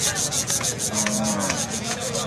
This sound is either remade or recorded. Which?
remade